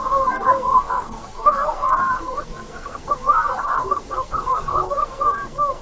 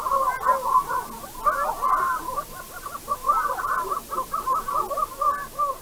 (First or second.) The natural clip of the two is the second